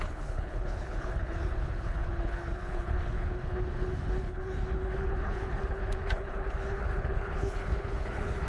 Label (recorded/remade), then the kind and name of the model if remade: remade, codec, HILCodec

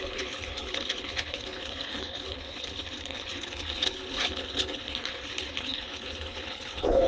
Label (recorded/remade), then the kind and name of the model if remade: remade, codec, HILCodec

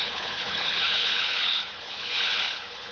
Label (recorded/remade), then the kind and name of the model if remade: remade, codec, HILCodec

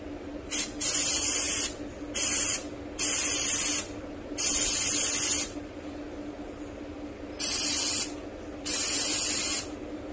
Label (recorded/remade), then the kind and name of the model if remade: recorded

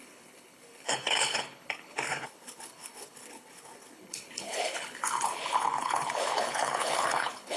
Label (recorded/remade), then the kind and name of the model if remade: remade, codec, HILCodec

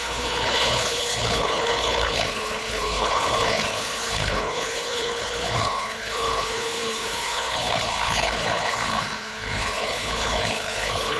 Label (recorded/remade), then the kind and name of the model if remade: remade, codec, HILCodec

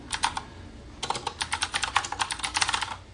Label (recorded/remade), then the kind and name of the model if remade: recorded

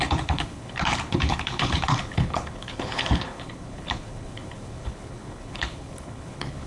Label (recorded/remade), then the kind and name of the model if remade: remade, codec, HILCodec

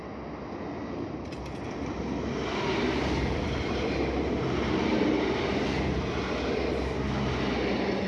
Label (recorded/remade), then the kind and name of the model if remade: recorded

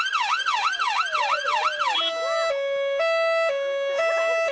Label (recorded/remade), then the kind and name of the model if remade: recorded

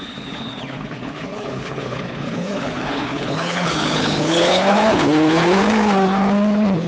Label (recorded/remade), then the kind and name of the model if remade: remade, codec, HILCodec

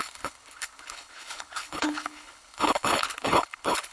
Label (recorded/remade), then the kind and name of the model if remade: remade, codec, HILCodec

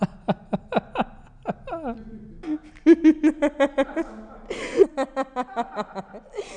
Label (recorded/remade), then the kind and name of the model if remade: recorded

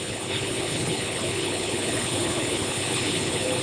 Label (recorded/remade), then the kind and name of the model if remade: remade, codec, HILCodec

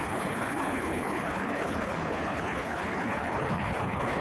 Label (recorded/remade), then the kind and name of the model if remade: remade, codec, HILCodec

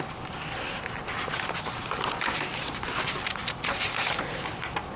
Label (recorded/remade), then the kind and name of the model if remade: recorded